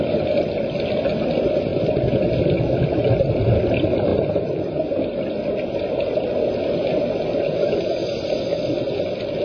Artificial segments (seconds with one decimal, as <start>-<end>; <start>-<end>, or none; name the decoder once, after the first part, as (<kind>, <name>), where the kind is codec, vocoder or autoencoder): none